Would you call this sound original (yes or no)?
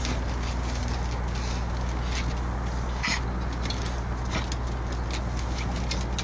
yes